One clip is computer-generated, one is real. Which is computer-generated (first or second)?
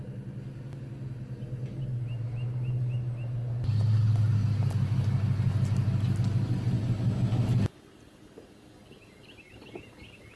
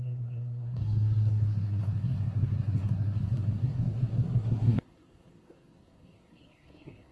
second